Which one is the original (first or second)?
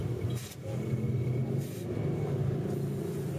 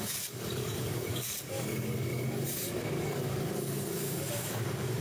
first